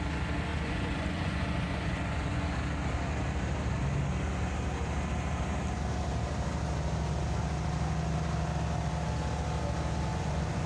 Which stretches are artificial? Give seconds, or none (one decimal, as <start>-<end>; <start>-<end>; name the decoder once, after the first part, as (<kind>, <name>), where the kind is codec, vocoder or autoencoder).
0.5-2.5 (vocoder, Vocos); 10.1-10.7